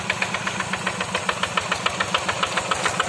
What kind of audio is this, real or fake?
real